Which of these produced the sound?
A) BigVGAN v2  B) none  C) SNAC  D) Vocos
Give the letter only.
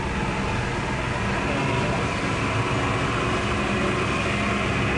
B